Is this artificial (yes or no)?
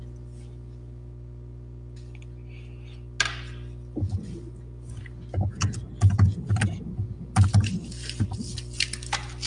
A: no